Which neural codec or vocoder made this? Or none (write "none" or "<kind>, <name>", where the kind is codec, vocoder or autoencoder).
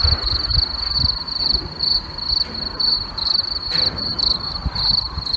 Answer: none